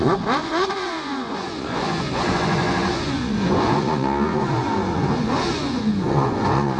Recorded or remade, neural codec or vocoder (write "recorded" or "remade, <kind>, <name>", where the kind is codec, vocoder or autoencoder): remade, vocoder, Vocos